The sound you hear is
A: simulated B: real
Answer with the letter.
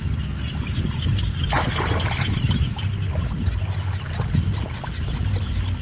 B